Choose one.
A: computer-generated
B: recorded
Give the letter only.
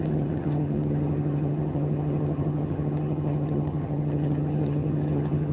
A